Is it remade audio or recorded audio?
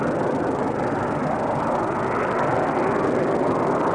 recorded